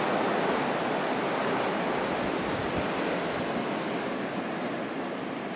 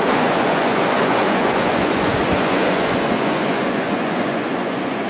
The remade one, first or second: second